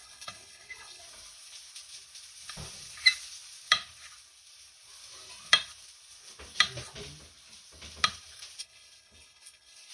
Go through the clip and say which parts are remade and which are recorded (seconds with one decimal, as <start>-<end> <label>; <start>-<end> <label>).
0.0-1.0 remade; 1.0-8.6 recorded; 8.6-9.9 remade